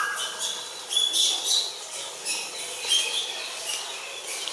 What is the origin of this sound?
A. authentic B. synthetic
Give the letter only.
A